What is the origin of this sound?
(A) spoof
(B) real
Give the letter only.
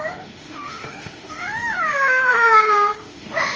A